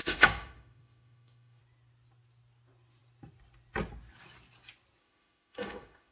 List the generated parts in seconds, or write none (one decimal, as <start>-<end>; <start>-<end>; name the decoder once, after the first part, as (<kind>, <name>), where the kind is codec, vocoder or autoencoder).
0.0-1.6 (autoencoder, DAC-VAE); 5.0-6.1